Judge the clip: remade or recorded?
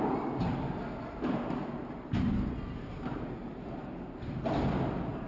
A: recorded